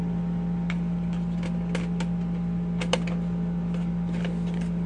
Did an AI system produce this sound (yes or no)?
no